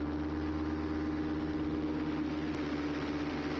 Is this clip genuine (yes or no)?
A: yes